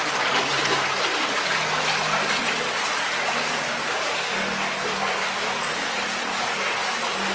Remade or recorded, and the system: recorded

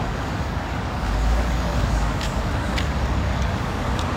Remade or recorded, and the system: remade, codec, DAC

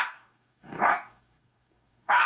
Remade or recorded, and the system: remade, codec, DAC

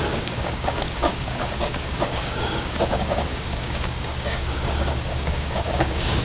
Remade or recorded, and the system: remade, codec, DAC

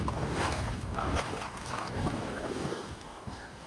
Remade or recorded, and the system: remade, codec, DAC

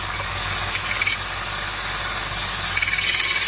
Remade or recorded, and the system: remade, codec, DAC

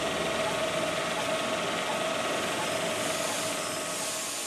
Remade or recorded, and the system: recorded